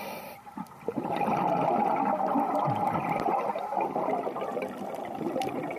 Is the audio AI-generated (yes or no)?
no